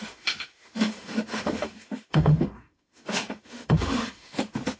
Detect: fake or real fake